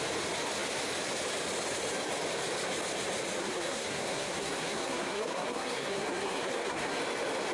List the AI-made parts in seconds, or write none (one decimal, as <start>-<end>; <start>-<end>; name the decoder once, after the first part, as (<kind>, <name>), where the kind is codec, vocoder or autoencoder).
3.4-7.0 (codec, SNAC)